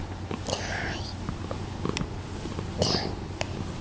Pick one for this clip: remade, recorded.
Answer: recorded